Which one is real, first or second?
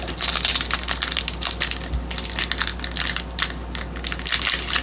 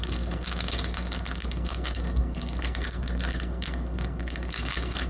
first